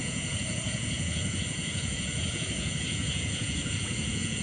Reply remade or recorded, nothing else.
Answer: remade